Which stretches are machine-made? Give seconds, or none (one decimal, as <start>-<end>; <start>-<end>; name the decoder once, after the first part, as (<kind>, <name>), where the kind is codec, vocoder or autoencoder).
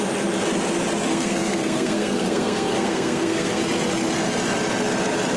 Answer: 1.1-3.6 (codec, SNAC)